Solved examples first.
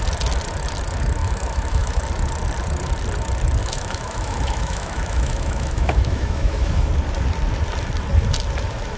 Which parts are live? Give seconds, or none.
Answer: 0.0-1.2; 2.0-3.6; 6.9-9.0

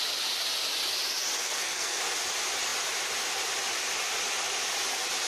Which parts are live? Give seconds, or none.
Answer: 0.0-1.4; 2.0-5.3